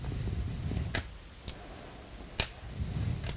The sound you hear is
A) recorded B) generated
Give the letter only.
A